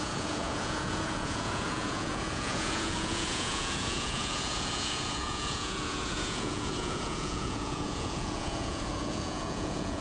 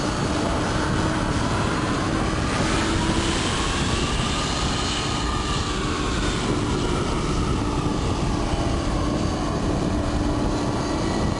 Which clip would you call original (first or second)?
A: second